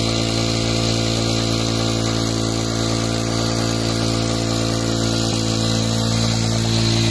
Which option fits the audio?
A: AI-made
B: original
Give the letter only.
B